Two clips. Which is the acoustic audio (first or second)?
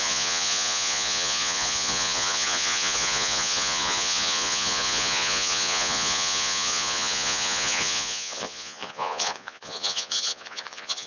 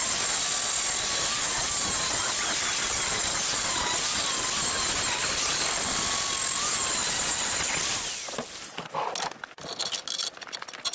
second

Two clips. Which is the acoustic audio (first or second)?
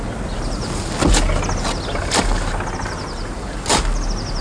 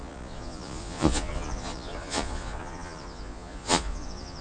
first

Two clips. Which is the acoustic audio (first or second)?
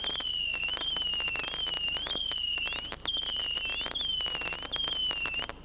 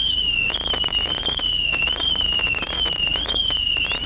first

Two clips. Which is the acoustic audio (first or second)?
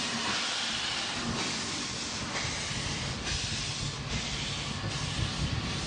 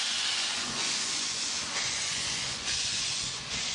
first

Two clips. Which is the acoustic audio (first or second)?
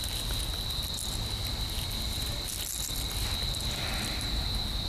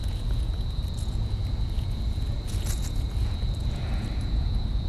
first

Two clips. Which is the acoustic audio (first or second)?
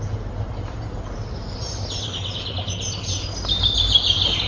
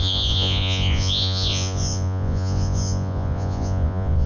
first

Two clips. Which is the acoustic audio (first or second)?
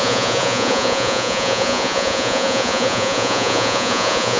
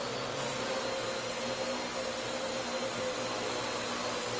second